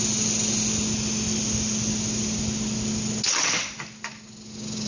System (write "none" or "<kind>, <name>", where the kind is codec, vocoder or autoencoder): none